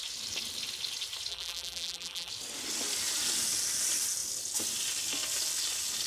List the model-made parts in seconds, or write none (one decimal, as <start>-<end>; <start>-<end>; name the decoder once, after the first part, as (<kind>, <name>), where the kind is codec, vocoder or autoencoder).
1.3-2.3 (vocoder, BigVGAN v2)